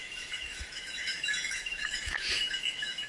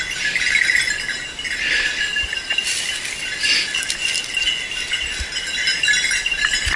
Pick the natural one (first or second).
second